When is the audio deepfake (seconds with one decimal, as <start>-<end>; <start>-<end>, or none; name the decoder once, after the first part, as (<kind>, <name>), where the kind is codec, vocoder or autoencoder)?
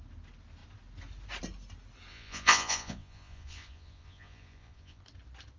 2.1-5.0 (vocoder, Vocos)